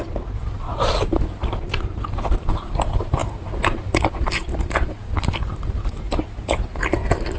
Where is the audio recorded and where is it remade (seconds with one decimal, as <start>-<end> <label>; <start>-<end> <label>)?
0.0-7.4 remade